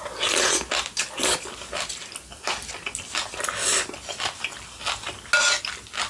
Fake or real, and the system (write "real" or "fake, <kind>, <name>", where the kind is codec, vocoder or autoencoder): real